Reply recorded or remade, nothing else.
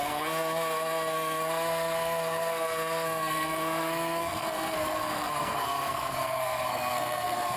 remade